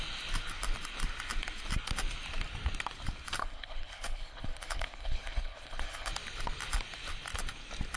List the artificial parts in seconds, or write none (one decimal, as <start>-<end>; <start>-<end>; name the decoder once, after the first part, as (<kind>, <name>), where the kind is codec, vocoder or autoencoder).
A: 3.4-6.1 (codec, HILCodec)